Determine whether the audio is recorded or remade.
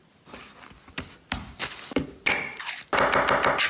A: recorded